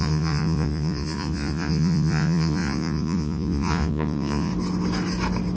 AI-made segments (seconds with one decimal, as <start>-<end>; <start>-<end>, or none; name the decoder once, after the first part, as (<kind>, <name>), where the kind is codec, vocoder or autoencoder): 0.0-4.5 (vocoder, Vocos)